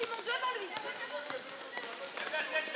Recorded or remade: recorded